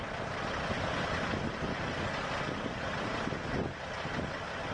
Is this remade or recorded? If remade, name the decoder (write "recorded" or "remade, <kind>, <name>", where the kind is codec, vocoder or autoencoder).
recorded